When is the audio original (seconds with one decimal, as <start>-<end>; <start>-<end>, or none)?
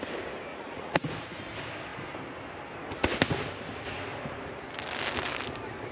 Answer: 0.0-0.5; 1.1-5.9